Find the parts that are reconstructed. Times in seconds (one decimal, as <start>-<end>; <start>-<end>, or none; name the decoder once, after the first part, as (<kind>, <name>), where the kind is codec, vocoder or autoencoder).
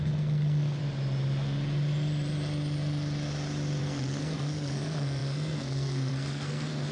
0.0-0.8 (codec, SNAC); 3.8-6.9